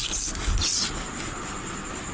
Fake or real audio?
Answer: real